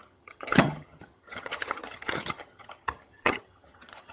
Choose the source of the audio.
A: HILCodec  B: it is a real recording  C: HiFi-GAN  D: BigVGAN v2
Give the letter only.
C